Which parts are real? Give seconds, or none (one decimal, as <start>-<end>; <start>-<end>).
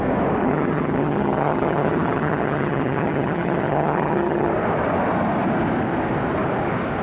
0.0-0.4; 4.5-7.0